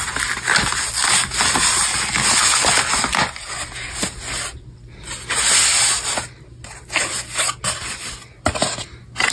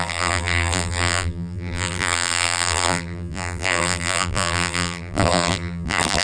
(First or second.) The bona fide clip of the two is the first